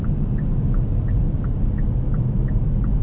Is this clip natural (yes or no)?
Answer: yes